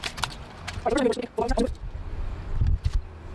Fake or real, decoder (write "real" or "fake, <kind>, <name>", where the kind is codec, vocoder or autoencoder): real